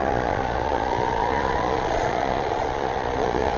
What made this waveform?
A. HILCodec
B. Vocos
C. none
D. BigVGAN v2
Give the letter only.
B